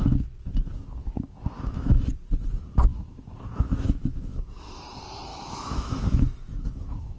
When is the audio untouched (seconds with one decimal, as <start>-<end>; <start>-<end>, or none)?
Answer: 0.0-1.0; 2.1-2.9; 4.8-5.3